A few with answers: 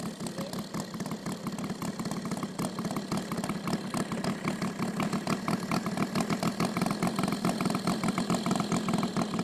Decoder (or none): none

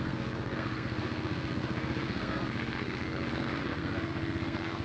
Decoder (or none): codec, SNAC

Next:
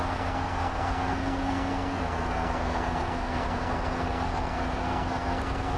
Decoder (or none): codec, SNAC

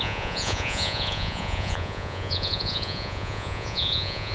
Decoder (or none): vocoder, Vocos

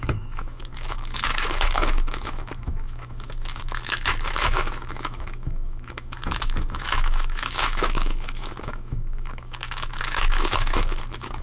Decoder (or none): autoencoder, DAC-VAE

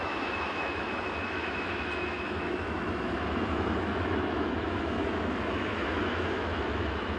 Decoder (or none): autoencoder, DAC-VAE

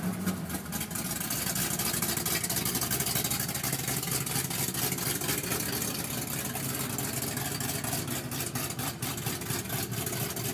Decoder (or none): none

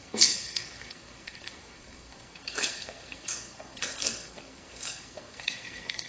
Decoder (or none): codec, SNAC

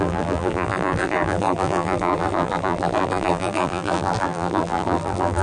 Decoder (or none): vocoder, BigVGAN v2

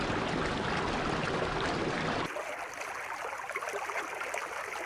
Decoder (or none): none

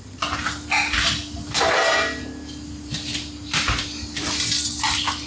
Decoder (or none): none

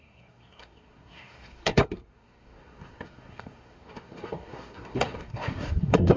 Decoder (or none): codec, SNAC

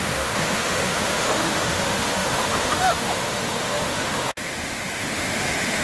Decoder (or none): autoencoder, DAC-VAE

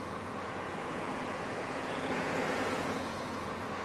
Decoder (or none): vocoder, Vocos